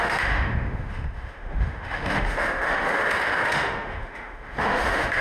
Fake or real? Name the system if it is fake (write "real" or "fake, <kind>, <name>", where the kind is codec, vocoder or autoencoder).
fake, autoencoder, DAC-VAE